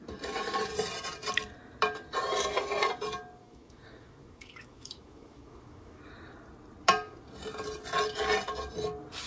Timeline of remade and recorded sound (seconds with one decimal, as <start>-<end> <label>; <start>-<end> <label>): 0.0-3.4 recorded; 3.4-6.0 remade; 6.0-9.3 recorded